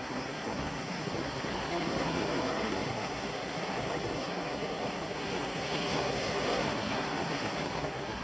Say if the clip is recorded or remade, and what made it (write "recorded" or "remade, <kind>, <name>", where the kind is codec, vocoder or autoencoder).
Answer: remade, codec, SNAC